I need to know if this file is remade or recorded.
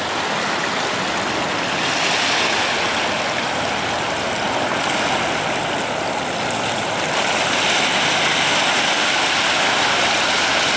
recorded